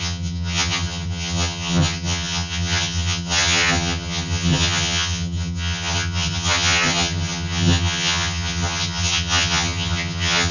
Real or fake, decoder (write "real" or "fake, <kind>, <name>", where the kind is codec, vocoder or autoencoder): fake, vocoder, HiFi-GAN